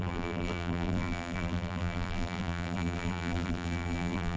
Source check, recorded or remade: remade